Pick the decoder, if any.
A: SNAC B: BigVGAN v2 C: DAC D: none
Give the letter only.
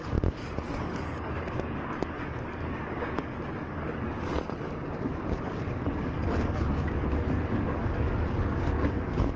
C